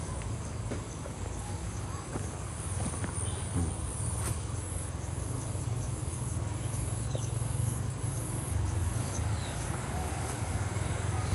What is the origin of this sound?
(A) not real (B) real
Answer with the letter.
A